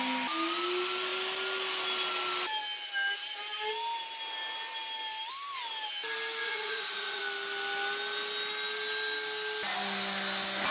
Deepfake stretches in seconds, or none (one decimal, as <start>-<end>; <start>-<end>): 6.4-7.2